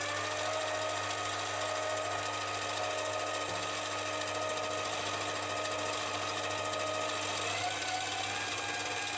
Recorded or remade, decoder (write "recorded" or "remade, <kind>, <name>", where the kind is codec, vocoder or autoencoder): recorded